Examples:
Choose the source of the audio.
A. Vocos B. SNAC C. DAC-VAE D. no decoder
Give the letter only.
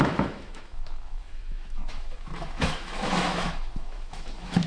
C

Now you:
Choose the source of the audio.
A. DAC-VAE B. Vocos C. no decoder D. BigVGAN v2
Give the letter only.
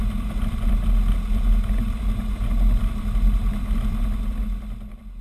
C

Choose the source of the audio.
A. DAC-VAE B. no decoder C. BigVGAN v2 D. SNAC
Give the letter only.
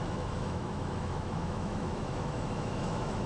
A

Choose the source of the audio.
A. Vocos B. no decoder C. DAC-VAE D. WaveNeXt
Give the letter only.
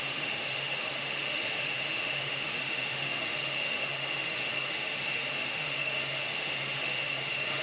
C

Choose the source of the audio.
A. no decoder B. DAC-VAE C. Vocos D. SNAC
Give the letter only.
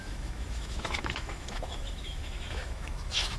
B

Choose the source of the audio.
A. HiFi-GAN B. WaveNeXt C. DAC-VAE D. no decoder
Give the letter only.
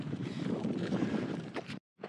D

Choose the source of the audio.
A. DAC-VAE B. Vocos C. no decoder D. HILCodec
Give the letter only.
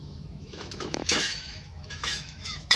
A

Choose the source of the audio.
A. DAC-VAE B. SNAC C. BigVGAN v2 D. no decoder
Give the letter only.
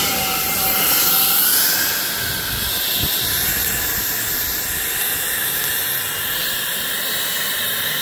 D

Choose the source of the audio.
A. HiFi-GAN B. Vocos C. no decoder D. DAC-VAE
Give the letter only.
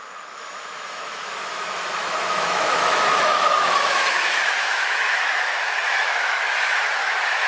D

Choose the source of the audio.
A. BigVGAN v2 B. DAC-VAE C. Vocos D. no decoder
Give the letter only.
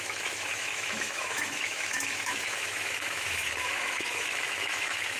B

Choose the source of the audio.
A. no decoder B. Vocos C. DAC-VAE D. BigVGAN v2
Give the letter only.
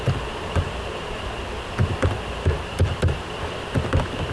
A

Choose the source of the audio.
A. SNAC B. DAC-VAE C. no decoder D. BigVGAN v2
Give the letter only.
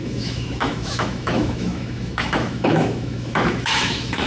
B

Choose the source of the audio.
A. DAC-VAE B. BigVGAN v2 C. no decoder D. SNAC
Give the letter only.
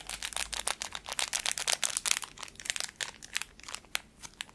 C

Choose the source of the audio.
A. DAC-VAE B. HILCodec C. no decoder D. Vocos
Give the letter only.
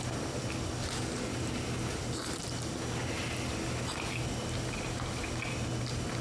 C